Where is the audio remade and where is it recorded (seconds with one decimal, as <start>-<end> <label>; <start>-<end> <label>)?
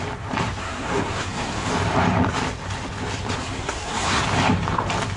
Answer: 0.0-0.6 recorded; 0.6-1.7 remade; 1.7-3.4 recorded; 3.4-4.2 remade; 4.2-5.2 recorded